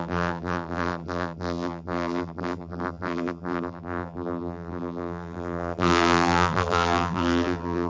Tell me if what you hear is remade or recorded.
remade